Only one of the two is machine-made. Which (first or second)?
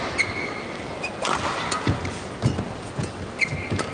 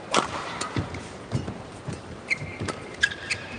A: second